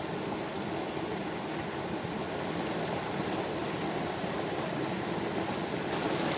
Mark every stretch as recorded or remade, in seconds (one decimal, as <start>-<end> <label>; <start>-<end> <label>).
0.0-3.6 recorded; 3.6-5.3 remade; 5.3-6.4 recorded